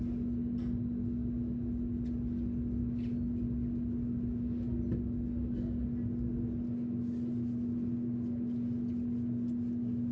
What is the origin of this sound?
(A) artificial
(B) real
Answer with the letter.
B